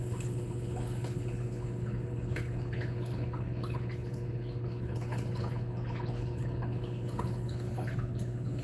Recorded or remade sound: remade